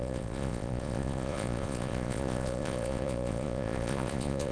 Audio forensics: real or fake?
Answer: fake